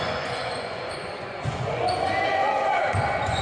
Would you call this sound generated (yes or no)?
yes